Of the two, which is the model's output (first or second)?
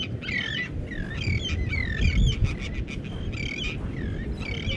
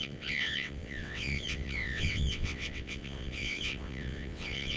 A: second